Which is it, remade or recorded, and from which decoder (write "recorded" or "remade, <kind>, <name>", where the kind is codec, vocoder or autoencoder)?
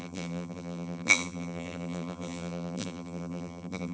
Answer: remade, vocoder, BigVGAN v2